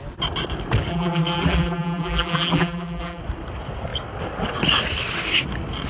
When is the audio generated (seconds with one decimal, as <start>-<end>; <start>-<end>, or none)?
0.9-3.2